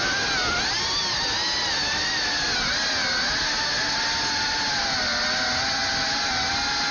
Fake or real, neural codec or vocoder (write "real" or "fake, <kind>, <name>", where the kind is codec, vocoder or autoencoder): real